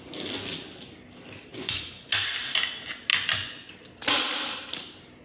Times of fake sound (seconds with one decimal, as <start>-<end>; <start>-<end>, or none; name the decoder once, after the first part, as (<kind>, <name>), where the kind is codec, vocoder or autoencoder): 1.5-2.1 (vocoder, Vocos); 3.1-3.7